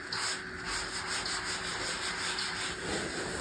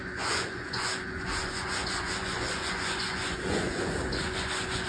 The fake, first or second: second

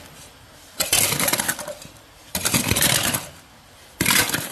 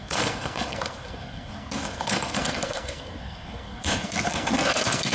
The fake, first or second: second